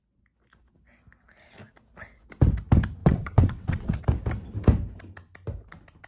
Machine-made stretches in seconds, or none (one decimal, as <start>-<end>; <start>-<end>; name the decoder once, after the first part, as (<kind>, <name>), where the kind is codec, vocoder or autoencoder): 3.0-4.0 (vocoder, WaveNeXt)